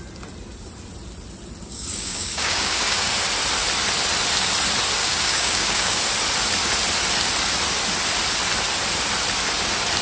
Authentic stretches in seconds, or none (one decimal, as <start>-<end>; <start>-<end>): 0.0-1.6; 3.1-5.0; 6.0-10.0